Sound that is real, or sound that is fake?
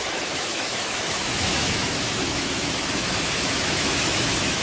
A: fake